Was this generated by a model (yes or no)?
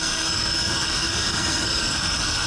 yes